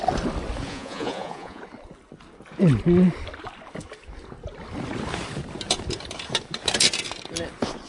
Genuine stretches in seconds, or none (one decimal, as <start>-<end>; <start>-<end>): 0.0-0.7; 1.6-7.9